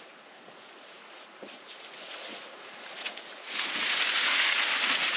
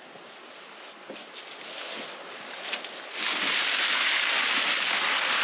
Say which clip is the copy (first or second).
first